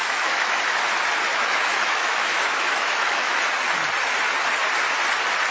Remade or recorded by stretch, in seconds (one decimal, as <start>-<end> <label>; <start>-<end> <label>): 0.0-0.6 remade; 0.6-1.3 recorded; 1.3-3.4 remade; 3.4-5.5 recorded